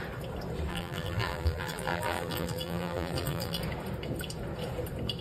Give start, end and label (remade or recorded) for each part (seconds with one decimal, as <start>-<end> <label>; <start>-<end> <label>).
0.0-0.7 recorded; 0.7-3.6 remade; 3.6-5.2 recorded